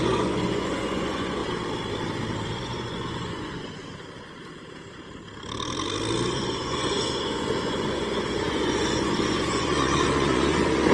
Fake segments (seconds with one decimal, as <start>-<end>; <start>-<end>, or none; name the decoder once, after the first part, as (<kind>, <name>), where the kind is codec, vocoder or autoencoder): 0.0-1.4 (vocoder, Vocos); 2.5-3.8; 6.3-10.9